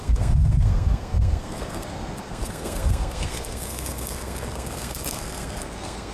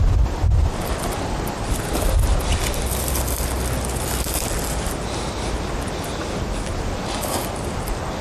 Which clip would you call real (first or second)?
second